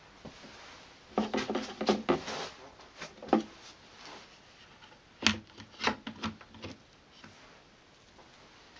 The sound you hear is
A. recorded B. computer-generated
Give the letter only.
A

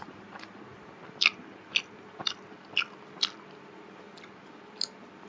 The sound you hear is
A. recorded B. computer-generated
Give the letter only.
A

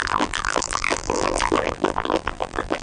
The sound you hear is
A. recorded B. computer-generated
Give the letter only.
B